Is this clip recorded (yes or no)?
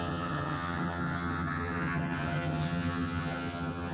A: no